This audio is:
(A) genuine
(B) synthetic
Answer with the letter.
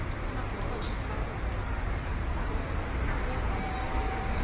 B